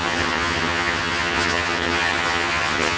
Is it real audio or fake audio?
fake